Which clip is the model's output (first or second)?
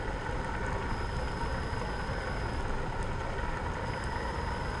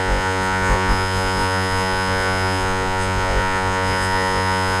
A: second